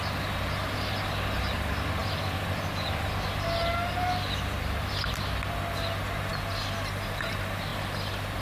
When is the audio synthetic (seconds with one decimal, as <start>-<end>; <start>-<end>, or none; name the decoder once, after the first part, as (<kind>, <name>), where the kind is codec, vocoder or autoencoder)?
none